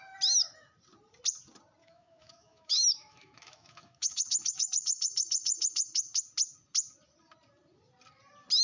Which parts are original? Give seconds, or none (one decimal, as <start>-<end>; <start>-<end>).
0.0-1.8; 6.2-8.6